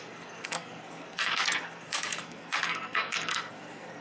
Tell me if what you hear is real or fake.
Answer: fake